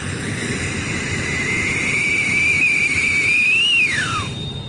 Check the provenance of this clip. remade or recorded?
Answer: recorded